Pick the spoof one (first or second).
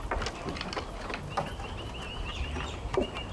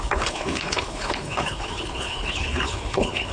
second